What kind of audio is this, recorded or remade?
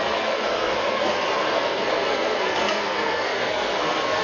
remade